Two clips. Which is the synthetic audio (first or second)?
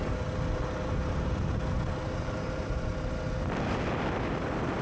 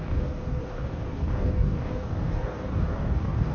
second